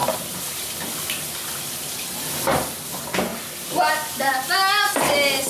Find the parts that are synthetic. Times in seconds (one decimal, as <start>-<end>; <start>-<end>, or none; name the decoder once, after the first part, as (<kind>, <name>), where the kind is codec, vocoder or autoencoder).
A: 0.0-2.2 (vocoder, BigVGAN v2)